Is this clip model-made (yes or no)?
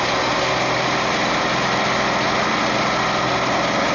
no